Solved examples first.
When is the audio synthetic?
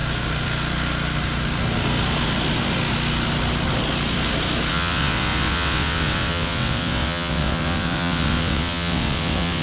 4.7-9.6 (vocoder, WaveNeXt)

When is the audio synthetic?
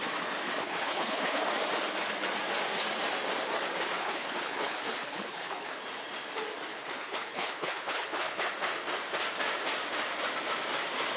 0.6-1.4 (codec, HILCodec); 4.0-5.8; 6.7-8.5